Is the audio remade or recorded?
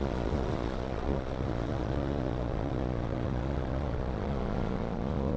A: remade